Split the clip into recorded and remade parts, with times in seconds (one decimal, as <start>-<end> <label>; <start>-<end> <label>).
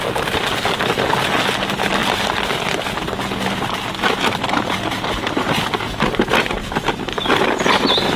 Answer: 0.0-8.2 recorded